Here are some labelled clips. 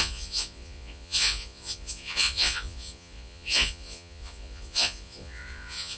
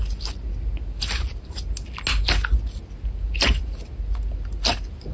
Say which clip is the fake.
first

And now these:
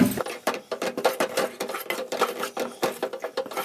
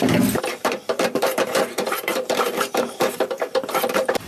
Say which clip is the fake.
second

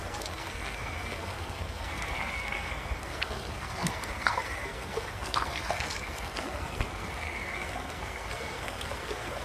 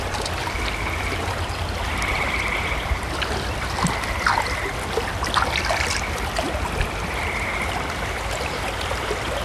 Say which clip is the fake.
first